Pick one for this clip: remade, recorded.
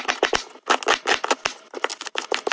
recorded